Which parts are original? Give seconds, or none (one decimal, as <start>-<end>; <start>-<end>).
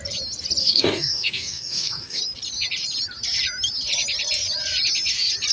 0.0-0.6; 2.2-5.5